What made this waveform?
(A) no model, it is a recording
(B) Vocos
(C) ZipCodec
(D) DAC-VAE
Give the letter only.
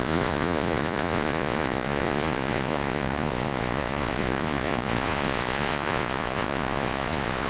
B